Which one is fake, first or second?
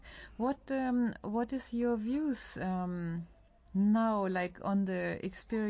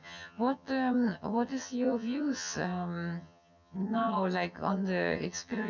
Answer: second